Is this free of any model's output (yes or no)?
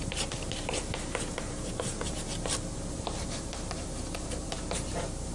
no